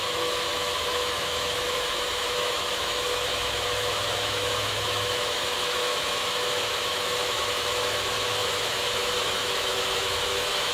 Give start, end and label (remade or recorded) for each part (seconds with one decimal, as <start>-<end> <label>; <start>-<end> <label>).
0.0-10.7 remade